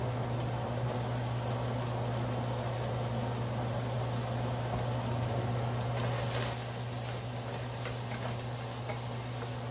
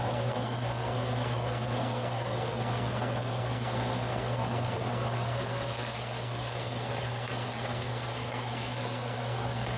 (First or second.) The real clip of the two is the first